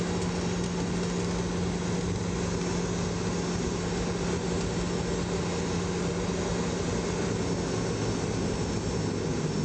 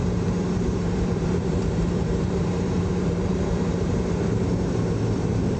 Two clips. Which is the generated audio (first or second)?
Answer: second